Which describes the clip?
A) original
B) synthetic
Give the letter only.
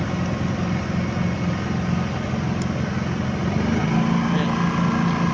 A